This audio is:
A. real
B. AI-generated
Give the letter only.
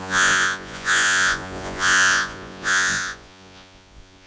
B